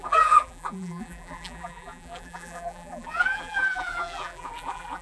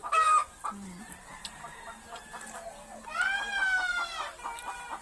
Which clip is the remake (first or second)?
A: first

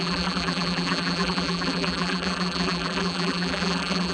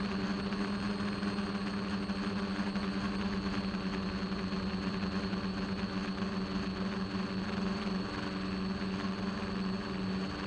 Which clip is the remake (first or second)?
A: first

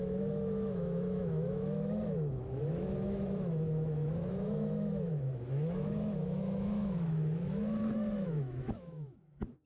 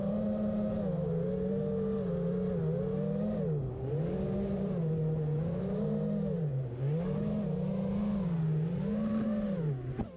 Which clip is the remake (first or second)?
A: first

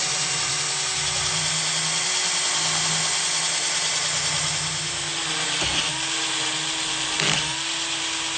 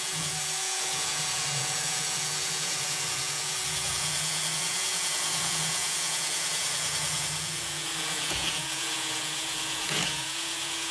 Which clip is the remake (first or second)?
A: second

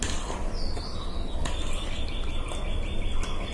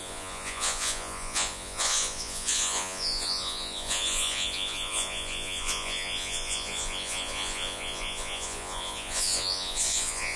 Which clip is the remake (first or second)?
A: second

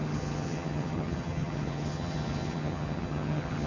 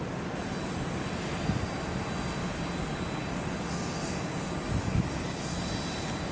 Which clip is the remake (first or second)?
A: first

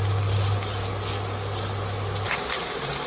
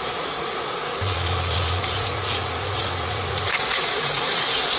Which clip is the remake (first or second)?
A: second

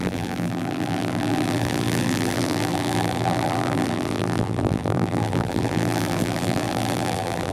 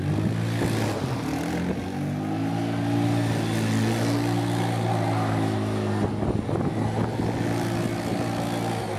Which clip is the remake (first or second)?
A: first